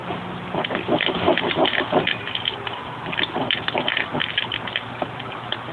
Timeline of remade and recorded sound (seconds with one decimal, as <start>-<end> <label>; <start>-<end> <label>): 0.0-5.7 recorded